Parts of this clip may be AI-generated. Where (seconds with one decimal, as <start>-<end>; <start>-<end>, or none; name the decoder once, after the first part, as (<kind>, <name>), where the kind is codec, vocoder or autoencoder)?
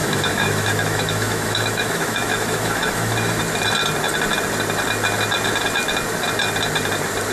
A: 0.0-3.4 (autoencoder, DAC-VAE)